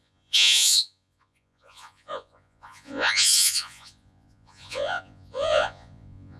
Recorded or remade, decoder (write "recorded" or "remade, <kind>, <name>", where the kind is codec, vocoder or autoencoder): remade, vocoder, Vocos